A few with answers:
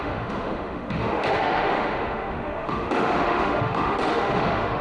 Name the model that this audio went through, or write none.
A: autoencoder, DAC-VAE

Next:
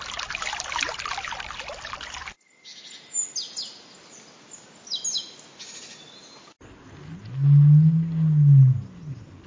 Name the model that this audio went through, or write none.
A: none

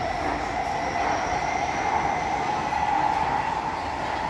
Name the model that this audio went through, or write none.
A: none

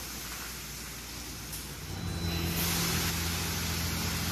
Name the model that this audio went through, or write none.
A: none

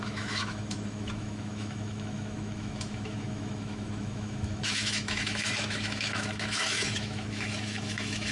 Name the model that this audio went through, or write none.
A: autoencoder, DAC-VAE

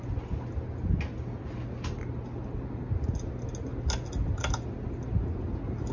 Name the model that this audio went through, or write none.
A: none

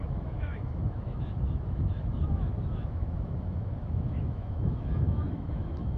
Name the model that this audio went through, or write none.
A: autoencoder, DAC-VAE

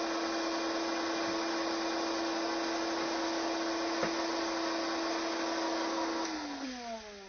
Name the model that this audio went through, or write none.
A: none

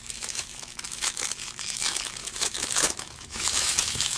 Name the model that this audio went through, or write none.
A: autoencoder, DAC-VAE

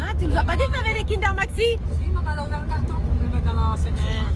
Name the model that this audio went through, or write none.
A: autoencoder, DAC-VAE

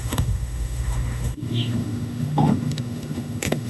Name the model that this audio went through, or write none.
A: autoencoder, DAC-VAE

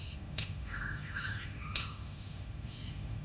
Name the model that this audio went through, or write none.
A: autoencoder, DAC-VAE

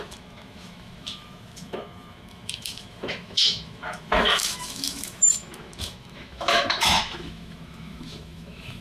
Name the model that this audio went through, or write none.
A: autoencoder, DAC-VAE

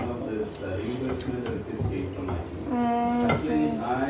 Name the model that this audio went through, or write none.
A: none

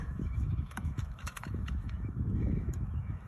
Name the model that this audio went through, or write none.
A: autoencoder, DAC-VAE